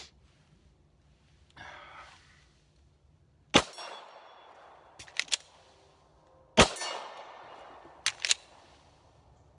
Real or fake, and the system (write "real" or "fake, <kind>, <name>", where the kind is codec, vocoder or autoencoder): real